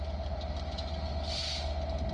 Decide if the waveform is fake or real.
real